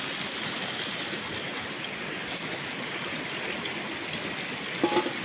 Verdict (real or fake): real